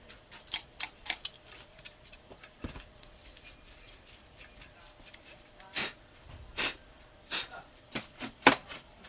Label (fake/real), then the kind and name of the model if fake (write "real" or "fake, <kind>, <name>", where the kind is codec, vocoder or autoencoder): fake, vocoder, BigVGAN v2